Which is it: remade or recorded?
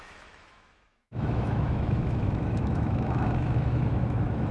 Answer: remade